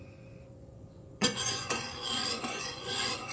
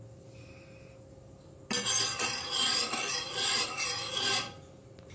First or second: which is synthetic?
first